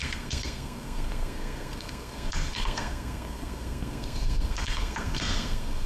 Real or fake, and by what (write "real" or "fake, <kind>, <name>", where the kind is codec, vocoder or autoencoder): fake, codec, SNAC